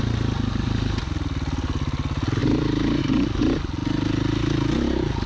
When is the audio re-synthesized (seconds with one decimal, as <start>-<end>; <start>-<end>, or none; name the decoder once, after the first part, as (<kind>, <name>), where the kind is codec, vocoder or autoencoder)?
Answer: 2.4-3.0 (vocoder, BigVGAN v2)